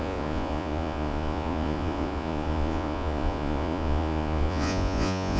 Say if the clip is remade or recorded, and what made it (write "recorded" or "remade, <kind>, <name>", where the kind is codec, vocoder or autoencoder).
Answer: remade, vocoder, Vocos